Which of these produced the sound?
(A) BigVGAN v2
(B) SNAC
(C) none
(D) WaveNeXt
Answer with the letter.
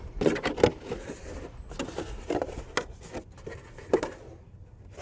C